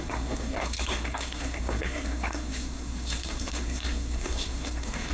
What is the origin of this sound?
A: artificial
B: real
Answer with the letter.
A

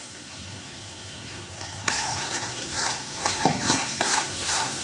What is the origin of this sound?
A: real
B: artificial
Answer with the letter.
B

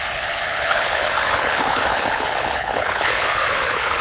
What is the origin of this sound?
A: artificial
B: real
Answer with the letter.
A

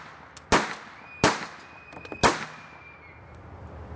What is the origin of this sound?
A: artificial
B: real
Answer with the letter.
B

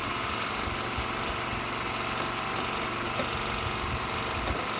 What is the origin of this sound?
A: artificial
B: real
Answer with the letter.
B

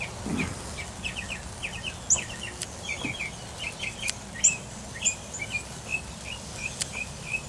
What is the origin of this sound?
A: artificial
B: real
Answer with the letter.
B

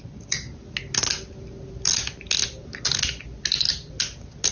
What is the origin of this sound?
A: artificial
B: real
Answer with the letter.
B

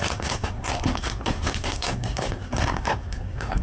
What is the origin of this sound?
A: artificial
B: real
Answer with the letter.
A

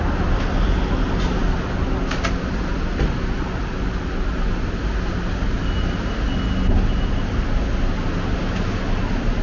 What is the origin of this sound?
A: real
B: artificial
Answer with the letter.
A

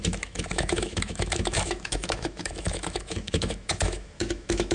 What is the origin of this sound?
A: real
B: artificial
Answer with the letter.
B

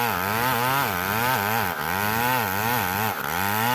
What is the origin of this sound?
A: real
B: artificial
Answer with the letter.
A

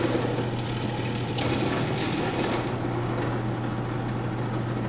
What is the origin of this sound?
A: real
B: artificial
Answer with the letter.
A